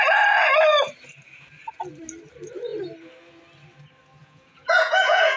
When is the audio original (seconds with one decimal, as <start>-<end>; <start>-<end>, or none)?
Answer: 0.0-4.2